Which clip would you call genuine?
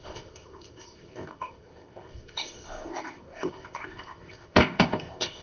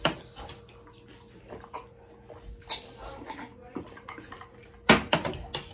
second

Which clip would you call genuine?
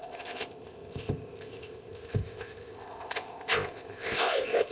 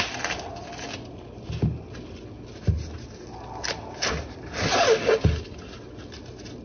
second